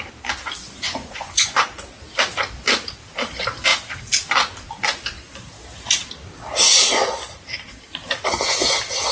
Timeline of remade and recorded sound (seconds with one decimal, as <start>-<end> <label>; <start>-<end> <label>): 0.0-0.6 recorded; 0.6-1.6 remade; 1.6-9.1 recorded